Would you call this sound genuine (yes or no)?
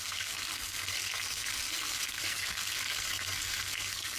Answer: no